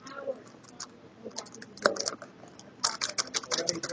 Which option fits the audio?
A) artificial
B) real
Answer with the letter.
B